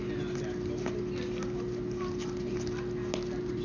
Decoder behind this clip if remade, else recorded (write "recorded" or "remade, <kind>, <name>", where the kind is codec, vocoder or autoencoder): recorded